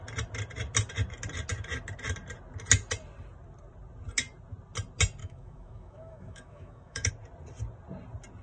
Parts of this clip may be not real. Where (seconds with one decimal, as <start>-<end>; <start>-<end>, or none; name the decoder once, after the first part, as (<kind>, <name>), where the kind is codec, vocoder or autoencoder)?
5.2-7.1 (autoencoder, DAC-VAE)